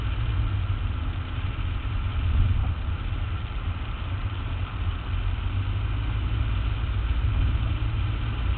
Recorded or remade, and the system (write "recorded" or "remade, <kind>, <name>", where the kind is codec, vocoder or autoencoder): recorded